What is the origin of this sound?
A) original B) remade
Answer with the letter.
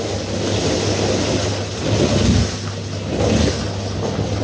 A